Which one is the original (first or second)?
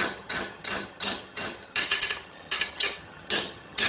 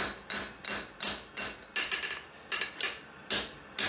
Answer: second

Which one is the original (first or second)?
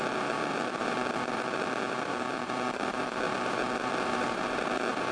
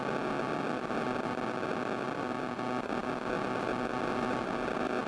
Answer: second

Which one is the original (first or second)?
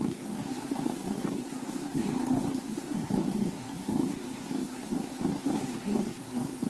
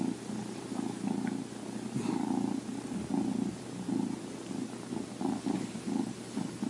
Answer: second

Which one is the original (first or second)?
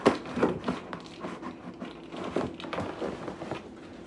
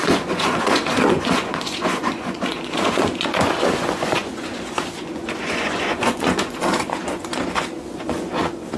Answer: first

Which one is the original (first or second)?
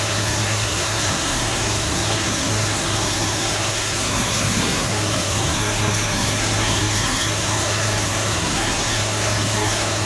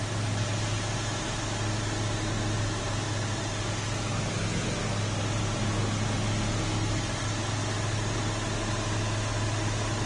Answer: second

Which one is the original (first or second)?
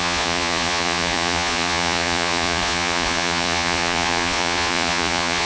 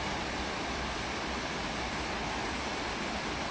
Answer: second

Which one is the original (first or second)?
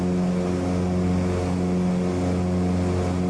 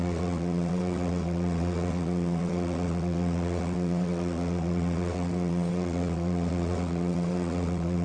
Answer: first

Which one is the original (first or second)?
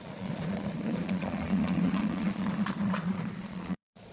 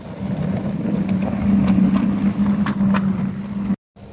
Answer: second